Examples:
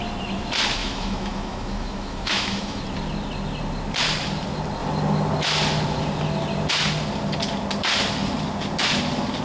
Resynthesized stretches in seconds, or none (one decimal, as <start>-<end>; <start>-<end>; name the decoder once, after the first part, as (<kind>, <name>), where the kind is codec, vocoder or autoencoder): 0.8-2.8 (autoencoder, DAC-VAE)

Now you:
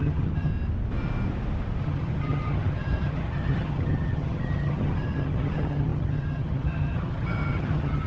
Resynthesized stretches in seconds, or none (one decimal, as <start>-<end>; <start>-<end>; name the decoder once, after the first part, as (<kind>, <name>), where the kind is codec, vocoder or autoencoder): 0.0-0.5 (vocoder, HiFi-GAN); 1.8-8.1

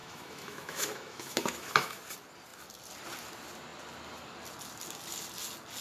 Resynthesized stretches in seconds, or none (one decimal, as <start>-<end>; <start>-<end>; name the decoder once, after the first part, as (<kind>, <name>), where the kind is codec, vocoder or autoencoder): 0.0-2.0 (autoencoder, DAC-VAE)

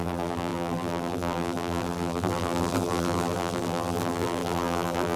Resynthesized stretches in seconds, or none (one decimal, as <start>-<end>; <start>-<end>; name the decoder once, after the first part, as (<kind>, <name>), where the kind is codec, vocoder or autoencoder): 0.0-5.2 (vocoder, BigVGAN v2)